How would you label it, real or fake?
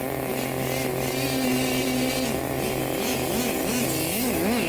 real